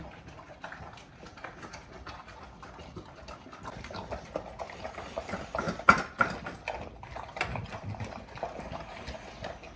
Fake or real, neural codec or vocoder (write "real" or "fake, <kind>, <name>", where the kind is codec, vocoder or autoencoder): real